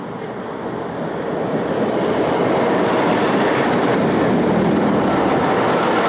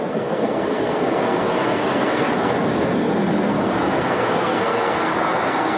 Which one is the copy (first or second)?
second